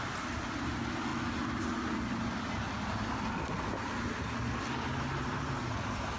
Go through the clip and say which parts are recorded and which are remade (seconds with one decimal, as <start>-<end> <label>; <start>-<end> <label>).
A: 0.0-6.2 recorded